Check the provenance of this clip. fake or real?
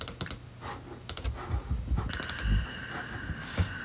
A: real